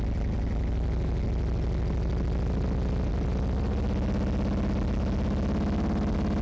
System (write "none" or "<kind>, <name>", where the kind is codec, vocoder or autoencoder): none